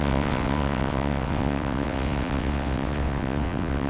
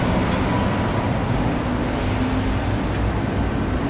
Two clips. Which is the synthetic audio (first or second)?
first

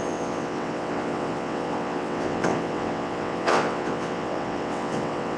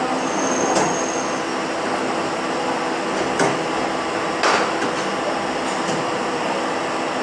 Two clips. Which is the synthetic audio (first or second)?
first